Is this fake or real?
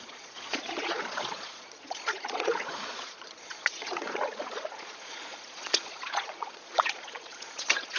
fake